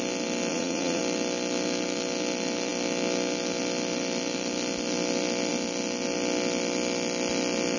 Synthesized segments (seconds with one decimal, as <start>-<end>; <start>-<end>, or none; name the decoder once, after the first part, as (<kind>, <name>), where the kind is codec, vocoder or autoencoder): 0.5-1.0 (vocoder, Vocos)